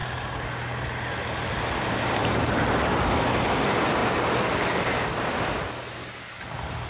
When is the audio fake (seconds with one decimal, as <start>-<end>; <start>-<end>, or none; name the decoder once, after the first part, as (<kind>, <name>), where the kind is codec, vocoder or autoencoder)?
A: none